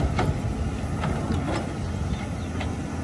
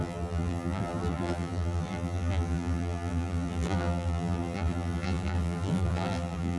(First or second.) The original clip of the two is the first